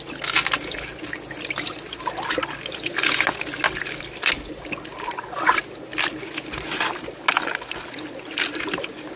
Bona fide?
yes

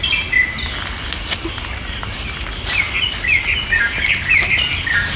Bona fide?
yes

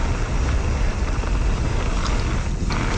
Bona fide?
yes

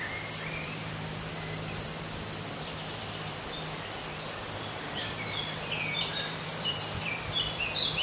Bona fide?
no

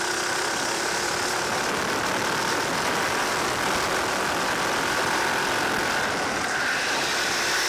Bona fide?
yes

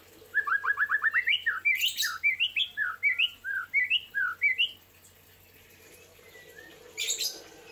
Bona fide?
yes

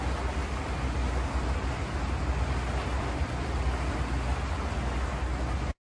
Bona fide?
yes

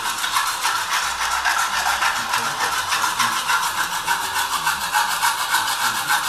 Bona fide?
yes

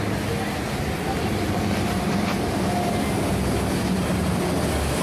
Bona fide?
yes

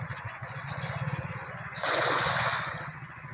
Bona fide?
no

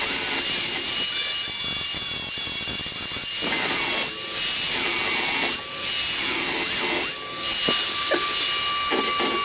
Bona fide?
yes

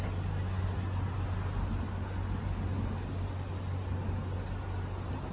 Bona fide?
yes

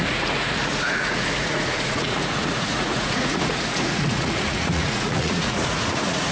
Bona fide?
no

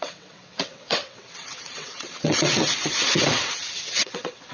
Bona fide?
no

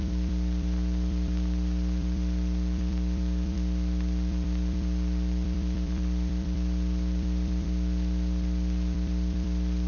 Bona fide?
no